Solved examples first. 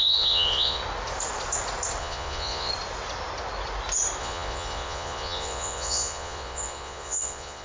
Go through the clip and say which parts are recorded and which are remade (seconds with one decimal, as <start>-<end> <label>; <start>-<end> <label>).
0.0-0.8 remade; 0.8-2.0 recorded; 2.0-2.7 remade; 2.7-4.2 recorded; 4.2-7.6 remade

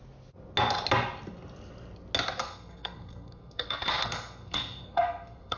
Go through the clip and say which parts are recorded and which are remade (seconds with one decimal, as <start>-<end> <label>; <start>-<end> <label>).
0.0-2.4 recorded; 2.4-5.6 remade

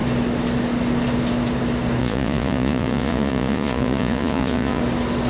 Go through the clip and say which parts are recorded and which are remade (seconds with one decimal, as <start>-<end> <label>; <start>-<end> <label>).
0.0-2.0 recorded; 2.0-4.8 remade; 4.8-5.3 recorded